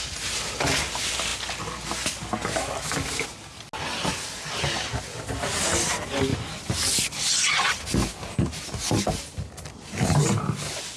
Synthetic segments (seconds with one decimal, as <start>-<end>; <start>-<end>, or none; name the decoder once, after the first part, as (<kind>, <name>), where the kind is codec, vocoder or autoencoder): none